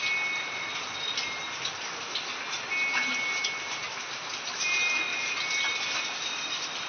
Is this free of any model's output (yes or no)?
yes